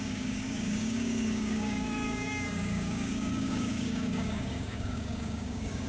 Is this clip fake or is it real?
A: fake